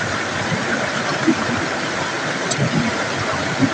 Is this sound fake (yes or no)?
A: no